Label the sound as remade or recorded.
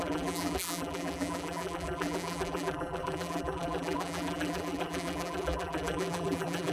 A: remade